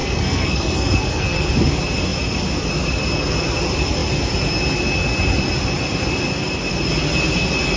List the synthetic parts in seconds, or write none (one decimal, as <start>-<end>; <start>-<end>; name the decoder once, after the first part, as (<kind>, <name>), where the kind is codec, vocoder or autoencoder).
0.0-1.5 (codec, SNAC)